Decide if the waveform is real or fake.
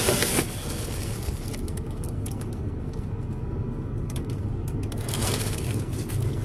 fake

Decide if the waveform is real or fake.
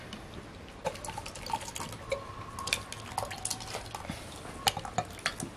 real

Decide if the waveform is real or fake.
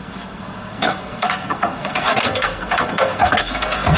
fake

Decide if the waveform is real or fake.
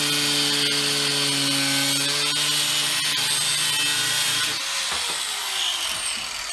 real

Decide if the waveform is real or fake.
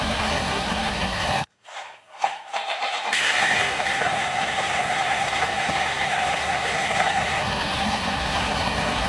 fake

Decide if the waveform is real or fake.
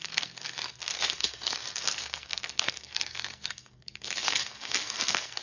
fake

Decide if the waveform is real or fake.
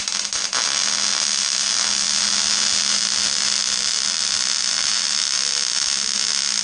real